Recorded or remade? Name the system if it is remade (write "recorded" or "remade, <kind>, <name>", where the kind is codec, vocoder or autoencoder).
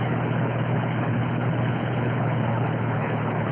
remade, codec, HILCodec